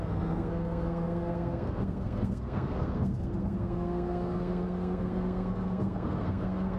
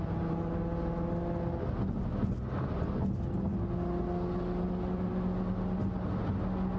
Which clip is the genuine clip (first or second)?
second